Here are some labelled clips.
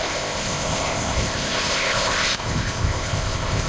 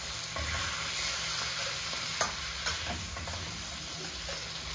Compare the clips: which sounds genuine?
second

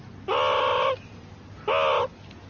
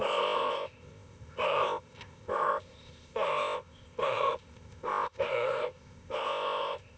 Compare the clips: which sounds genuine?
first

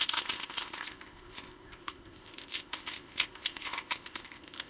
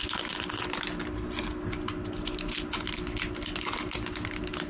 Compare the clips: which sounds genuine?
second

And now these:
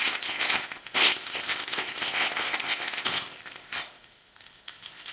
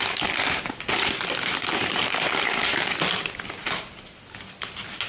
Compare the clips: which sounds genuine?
second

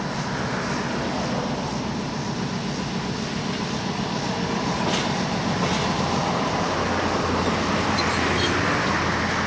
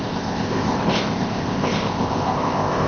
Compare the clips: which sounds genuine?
first